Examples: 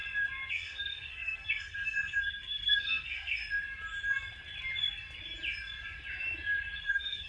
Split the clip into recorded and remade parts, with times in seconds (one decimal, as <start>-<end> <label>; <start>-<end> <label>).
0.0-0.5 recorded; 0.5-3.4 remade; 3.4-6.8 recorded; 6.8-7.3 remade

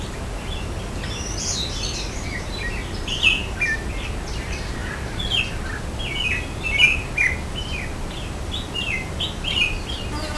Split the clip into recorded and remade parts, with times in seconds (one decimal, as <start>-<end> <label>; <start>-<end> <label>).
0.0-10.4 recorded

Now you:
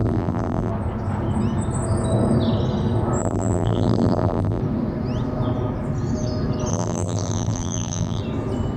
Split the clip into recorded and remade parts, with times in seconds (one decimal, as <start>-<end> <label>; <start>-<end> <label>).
0.0-0.7 remade; 0.7-3.2 recorded; 3.2-4.6 remade; 4.6-6.7 recorded; 6.7-8.2 remade; 8.2-8.8 recorded

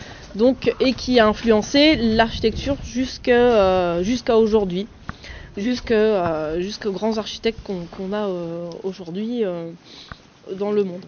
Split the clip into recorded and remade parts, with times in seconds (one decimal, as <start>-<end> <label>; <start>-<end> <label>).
0.0-5.3 recorded; 5.3-5.9 remade; 5.9-11.1 recorded

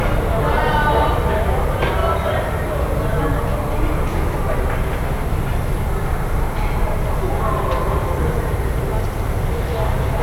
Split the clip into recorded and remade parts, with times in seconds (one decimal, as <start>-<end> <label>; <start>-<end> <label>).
0.0-2.0 recorded; 2.0-2.7 remade; 2.7-10.2 recorded